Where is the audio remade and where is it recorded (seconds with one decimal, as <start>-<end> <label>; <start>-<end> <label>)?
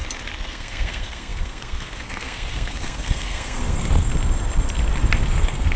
0.0-0.5 recorded; 0.5-4.1 remade; 4.1-5.3 recorded; 5.3-5.8 remade